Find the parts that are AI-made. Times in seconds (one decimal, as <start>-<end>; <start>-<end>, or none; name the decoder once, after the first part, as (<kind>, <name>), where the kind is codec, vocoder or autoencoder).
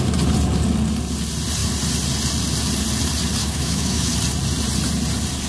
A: 3.4-4.1 (autoencoder, DAC-VAE)